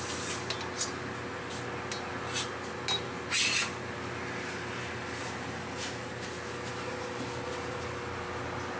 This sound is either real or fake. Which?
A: real